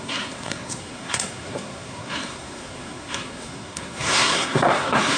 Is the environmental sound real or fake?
fake